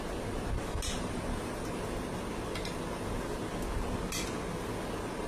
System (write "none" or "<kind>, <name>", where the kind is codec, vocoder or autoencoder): none